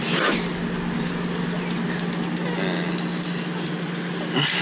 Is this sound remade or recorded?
recorded